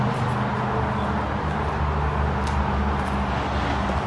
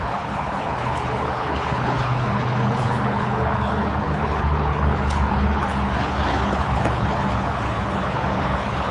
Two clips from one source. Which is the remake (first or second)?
second